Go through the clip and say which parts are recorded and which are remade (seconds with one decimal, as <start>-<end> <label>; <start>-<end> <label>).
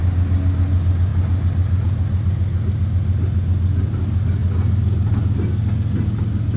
0.0-6.6 recorded